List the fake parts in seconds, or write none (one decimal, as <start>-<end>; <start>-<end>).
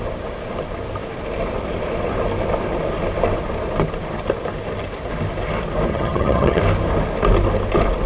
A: 5.9-6.6